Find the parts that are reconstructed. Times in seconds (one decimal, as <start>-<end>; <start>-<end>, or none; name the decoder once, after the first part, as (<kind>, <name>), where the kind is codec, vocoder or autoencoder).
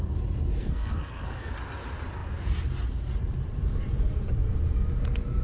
0.6-1.5 (codec, SNAC)